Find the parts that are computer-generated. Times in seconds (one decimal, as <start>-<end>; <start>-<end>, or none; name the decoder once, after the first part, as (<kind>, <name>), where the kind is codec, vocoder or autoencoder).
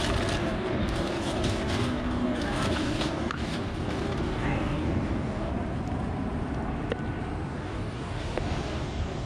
0.4-5.5 (codec, DAC); 7.5-9.3